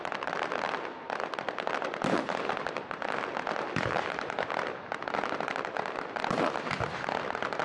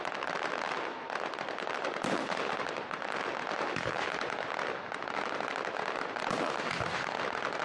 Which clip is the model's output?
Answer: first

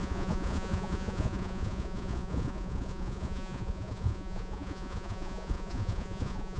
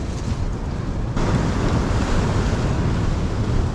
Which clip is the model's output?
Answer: first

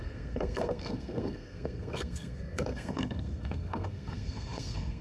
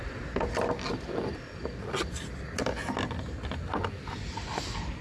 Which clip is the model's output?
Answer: first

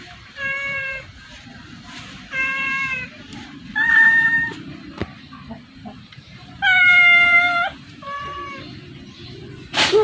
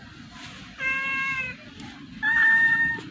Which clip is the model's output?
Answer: first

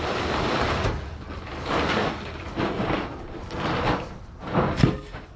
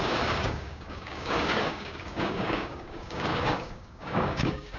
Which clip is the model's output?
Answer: second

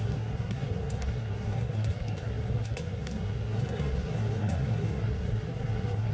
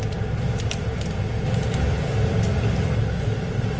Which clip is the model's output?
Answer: first